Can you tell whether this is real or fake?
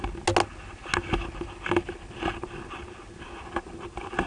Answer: real